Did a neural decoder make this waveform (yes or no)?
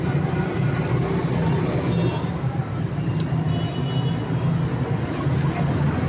no